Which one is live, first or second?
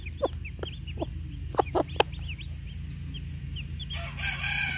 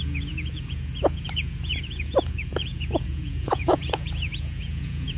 first